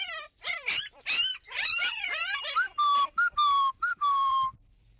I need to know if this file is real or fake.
fake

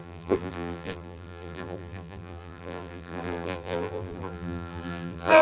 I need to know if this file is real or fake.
fake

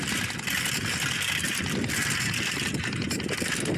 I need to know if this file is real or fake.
real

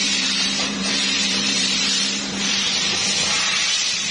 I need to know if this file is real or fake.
fake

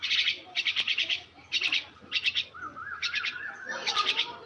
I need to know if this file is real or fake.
real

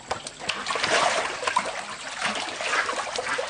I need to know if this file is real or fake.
real